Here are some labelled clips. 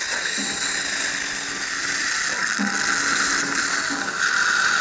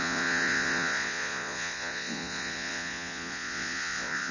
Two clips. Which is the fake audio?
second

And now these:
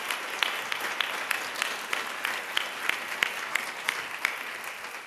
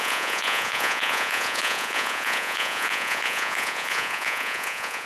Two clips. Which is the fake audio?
second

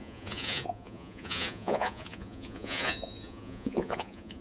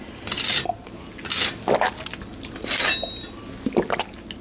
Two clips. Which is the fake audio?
first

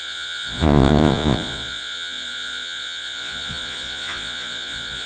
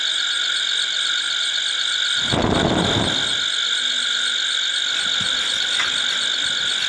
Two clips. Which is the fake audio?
first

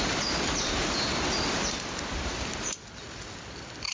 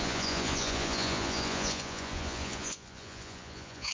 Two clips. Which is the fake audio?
second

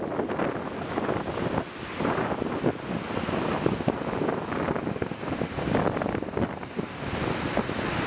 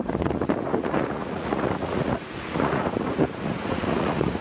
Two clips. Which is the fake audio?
second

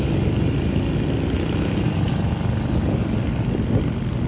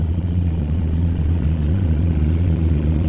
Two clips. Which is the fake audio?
second